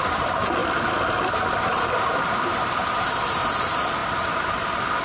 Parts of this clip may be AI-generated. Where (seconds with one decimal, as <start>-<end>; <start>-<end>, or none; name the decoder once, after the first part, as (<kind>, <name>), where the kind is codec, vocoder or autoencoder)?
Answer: none